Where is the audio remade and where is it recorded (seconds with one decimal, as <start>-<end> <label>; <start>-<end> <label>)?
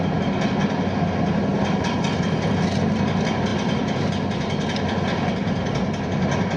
0.0-1.5 recorded; 1.5-2.2 remade; 2.2-3.5 recorded; 3.5-4.1 remade; 4.1-5.4 recorded; 5.4-6.6 remade